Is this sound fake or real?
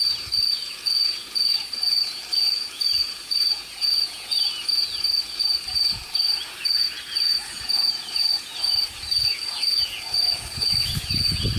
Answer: fake